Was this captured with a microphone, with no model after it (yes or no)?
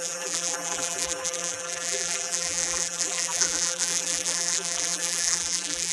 no